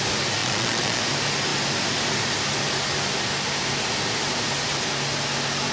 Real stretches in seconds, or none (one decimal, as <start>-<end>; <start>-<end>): 0.0-0.4; 1.0-5.7